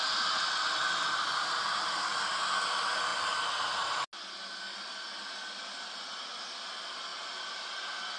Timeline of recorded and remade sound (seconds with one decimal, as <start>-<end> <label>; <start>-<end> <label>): 0.0-8.2 recorded